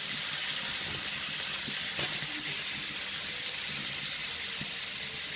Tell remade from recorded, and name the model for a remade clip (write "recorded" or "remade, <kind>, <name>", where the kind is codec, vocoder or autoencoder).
recorded